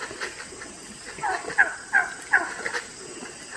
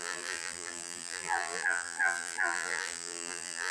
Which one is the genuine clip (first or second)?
first